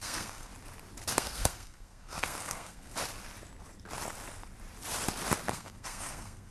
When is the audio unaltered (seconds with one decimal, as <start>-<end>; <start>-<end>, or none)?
0.5-1.1; 2.9-5.5